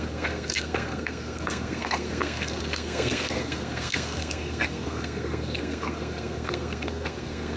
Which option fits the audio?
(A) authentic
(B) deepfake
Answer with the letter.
B